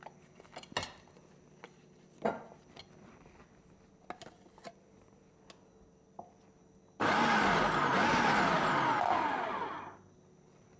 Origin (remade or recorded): recorded